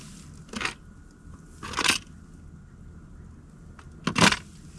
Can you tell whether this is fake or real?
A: real